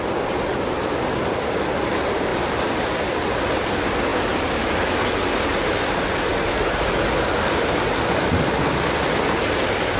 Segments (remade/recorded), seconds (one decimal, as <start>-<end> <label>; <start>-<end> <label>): 0.0-4.1 recorded; 4.1-4.6 remade; 4.6-10.0 recorded